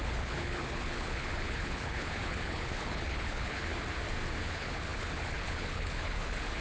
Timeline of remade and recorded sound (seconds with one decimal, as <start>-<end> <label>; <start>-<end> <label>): 0.0-3.7 remade; 3.7-4.4 recorded; 4.4-6.6 remade